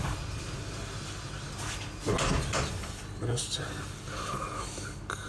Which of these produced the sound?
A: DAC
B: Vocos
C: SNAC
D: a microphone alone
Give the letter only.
D